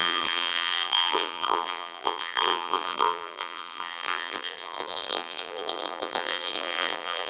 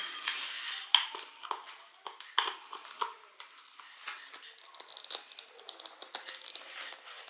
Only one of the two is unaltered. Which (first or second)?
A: second